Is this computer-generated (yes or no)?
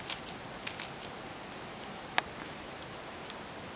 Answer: no